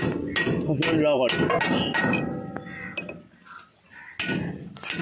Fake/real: real